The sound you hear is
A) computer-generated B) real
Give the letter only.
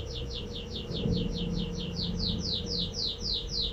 B